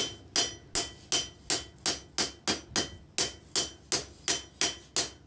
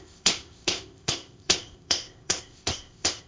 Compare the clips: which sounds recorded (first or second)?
first